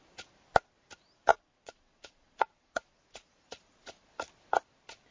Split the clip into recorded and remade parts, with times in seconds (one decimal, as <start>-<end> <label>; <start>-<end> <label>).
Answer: 0.0-1.3 recorded; 1.3-4.1 remade; 4.1-5.1 recorded